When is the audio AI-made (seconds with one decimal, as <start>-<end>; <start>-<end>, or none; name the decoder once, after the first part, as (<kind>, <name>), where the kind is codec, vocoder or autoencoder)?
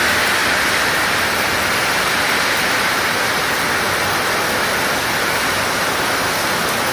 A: 0.4-4.5 (vocoder, BigVGAN v2)